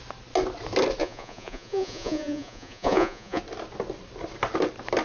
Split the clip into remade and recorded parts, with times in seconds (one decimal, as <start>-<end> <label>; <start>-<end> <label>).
0.0-1.0 recorded; 1.0-3.4 remade; 3.4-5.0 recorded